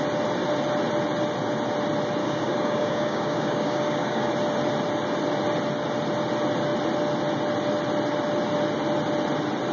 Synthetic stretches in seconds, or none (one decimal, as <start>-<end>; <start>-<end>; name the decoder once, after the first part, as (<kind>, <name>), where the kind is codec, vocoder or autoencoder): 2.2-4.3 (codec, DAC)